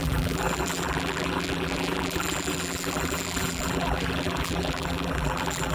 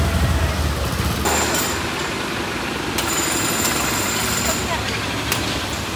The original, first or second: second